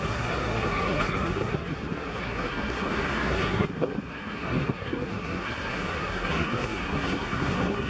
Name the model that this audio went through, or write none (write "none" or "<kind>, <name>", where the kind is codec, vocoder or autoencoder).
codec, SNAC